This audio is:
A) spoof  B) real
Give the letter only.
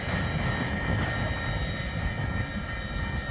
B